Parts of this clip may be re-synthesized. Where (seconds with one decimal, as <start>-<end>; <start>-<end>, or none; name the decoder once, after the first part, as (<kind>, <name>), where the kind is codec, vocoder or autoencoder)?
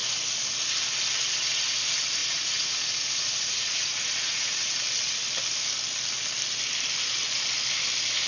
2.2-4.7 (vocoder, Vocos)